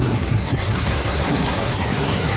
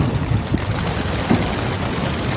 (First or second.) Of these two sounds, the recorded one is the second